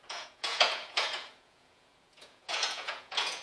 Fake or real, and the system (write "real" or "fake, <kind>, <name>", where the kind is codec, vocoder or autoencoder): fake, vocoder, Vocos